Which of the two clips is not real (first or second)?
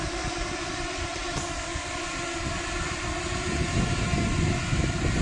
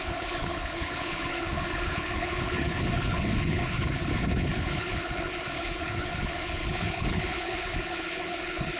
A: second